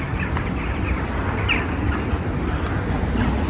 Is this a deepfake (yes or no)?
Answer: no